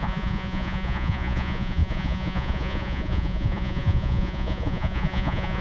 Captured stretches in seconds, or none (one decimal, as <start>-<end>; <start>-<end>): none